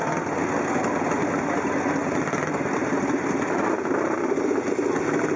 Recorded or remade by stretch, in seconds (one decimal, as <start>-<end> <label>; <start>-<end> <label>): 0.0-5.4 recorded